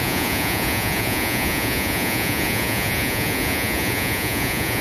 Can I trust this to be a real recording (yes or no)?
no